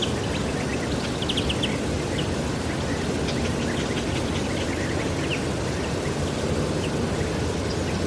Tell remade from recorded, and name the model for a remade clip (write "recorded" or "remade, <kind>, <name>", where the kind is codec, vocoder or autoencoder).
recorded